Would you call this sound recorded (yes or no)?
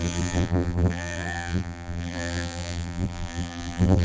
no